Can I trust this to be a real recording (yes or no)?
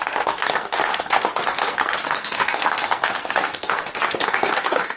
no